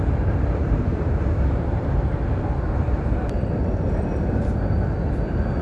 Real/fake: real